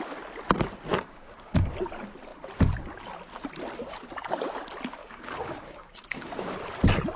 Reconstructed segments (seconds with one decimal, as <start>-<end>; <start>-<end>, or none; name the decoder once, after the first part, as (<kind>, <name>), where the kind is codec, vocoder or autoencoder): 0.9-1.7 (codec, DAC); 5.0-6.5